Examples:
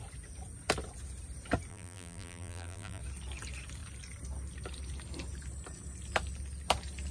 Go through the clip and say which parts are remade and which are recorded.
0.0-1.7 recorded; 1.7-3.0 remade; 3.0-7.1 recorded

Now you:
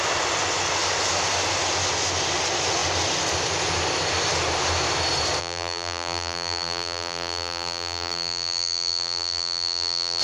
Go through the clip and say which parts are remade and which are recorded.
0.0-5.4 recorded; 5.4-10.2 remade

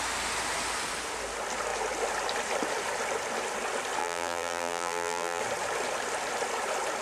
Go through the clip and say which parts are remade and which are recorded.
0.0-4.0 recorded; 4.0-5.4 remade; 5.4-7.0 recorded

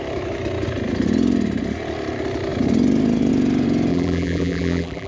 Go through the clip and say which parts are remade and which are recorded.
0.0-3.9 recorded; 3.9-5.1 remade

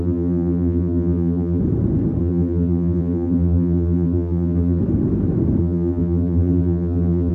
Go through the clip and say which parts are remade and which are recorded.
0.0-1.6 remade; 1.6-2.2 recorded; 2.2-4.8 remade; 4.8-5.6 recorded; 5.6-7.3 remade